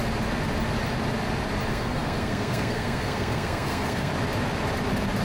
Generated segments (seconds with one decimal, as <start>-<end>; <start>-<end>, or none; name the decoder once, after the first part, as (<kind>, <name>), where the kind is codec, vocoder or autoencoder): 1.7-4.1 (codec, SNAC)